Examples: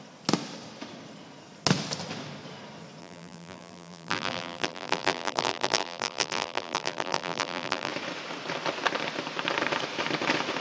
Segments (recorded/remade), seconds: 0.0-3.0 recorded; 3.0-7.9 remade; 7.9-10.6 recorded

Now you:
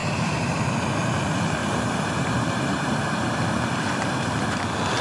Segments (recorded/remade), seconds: 0.0-0.6 remade; 0.6-1.6 recorded; 1.6-4.6 remade; 4.6-5.0 recorded

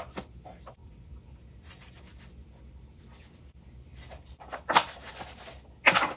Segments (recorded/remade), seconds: 0.0-0.8 recorded; 0.8-2.1 remade; 2.1-3.9 recorded; 3.9-5.1 remade; 5.1-6.2 recorded

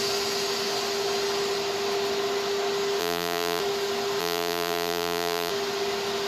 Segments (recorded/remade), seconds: 0.0-3.0 recorded; 3.0-3.6 remade; 3.6-4.2 recorded; 4.2-5.5 remade; 5.5-6.3 recorded

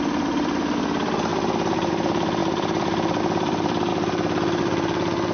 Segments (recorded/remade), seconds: 0.0-1.3 remade; 1.3-1.9 recorded; 1.9-3.9 remade; 3.9-4.6 recorded; 4.6-5.3 remade